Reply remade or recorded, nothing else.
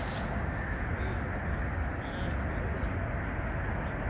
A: recorded